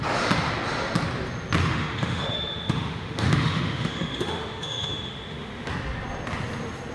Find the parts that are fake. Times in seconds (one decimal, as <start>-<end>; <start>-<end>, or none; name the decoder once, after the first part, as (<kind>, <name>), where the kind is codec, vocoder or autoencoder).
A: 1.6-5.7 (autoencoder, DAC-VAE)